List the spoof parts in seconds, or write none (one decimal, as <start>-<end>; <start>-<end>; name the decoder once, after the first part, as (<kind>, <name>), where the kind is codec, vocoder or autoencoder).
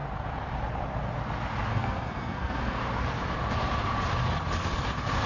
1.7-2.8 (codec, SNAC)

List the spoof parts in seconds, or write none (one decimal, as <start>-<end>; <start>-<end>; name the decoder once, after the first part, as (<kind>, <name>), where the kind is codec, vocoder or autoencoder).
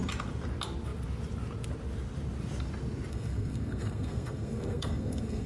3.1-5.5 (codec, SNAC)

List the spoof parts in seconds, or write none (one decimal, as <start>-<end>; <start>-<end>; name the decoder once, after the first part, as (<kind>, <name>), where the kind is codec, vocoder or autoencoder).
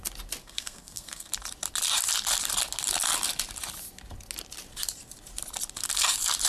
0.4-1.3 (codec, SNAC)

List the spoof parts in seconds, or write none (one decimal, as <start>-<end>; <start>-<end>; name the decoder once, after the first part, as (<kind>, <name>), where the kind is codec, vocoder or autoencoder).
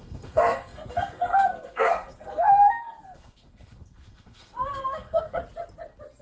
0.0-5.4 (codec, SNAC)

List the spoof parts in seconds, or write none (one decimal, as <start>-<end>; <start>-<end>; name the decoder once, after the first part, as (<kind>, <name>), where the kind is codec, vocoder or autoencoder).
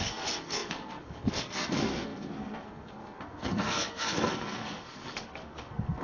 0.0-6.0 (codec, SNAC)